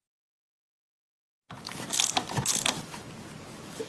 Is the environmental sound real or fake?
real